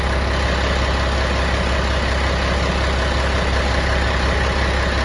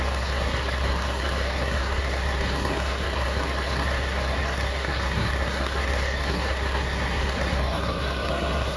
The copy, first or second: second